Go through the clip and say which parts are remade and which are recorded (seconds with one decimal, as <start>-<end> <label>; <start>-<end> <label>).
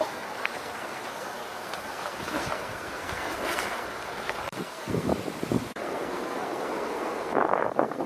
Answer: 0.0-5.1 remade; 5.1-5.7 recorded; 5.7-8.1 remade